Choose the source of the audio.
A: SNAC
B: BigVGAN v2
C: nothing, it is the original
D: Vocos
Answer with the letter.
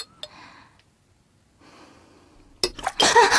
C